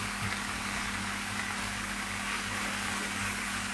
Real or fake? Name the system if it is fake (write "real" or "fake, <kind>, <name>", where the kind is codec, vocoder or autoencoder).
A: fake, codec, DAC